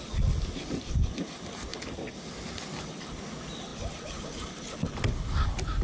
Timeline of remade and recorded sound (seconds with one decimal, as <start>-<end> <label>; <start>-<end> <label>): 0.0-5.8 recorded